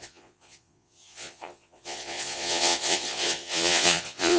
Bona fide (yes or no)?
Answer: no